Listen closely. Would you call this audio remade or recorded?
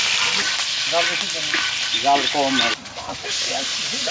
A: recorded